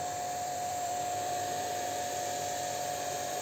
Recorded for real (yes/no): no